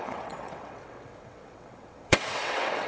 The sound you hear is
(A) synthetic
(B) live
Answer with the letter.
A